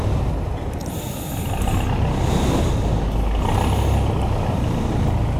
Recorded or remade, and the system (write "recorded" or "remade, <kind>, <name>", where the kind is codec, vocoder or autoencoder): recorded